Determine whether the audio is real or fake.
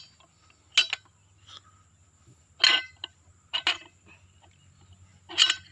real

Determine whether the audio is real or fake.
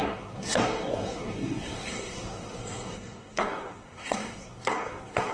fake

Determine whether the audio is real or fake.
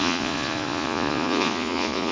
fake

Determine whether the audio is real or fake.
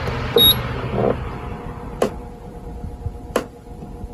real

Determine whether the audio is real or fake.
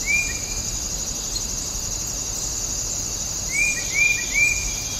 real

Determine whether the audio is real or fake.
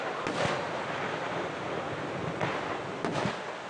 real